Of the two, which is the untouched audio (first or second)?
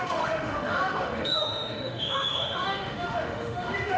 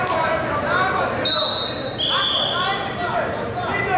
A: second